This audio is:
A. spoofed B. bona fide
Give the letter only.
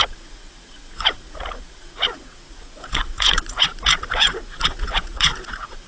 A